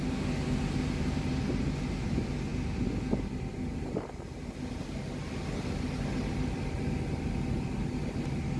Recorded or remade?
recorded